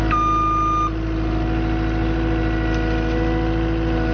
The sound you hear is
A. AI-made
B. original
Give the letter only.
B